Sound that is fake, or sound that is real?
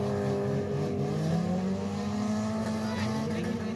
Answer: real